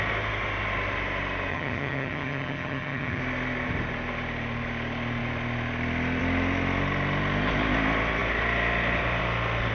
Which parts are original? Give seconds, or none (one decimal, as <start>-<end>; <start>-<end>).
0.0-1.5; 3.2-9.7